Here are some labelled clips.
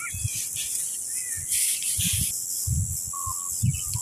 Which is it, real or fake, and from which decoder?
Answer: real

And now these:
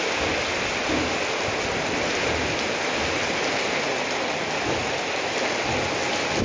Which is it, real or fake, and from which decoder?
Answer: real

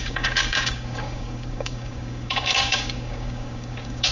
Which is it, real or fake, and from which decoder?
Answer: fake, codec, DAC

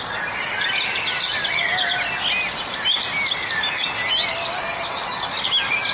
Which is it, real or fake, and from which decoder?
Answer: real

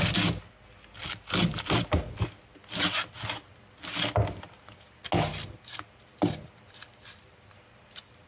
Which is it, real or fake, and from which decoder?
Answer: real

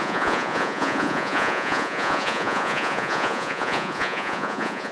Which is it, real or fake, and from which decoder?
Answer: fake, vocoder, Vocos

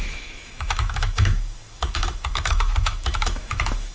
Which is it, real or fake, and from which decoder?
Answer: fake, autoencoder, DAC-VAE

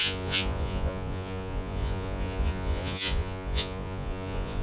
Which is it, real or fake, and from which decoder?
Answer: fake, vocoder, Vocos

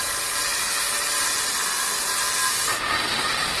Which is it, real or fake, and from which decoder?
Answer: real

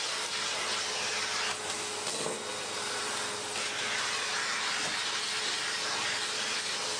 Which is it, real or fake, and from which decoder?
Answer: real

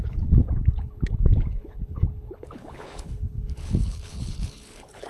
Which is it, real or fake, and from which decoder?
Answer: fake, codec, HILCodec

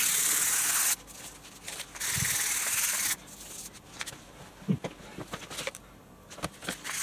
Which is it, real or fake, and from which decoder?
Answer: real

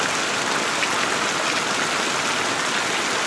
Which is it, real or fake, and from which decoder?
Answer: real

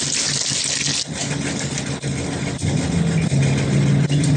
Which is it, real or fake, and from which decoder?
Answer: real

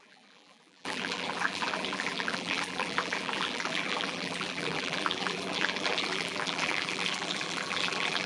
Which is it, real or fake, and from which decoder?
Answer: fake, vocoder, BigVGAN v2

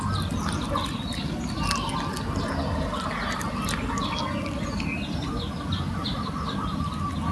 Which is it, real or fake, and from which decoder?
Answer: real